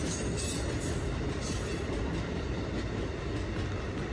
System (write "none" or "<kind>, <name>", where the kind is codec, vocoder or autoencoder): none